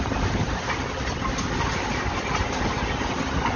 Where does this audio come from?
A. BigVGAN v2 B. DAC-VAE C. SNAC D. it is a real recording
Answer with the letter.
D